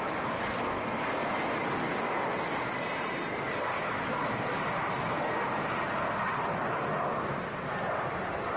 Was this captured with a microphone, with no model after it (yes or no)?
yes